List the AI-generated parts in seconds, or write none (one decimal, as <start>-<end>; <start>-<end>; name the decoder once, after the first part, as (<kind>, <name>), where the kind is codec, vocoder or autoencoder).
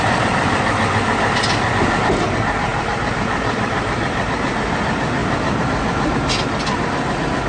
2.7-4.3 (vocoder, BigVGAN v2)